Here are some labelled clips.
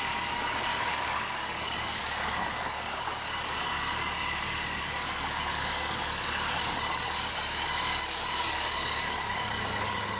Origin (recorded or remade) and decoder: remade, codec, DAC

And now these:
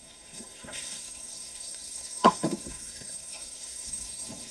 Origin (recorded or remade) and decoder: remade, codec, SNAC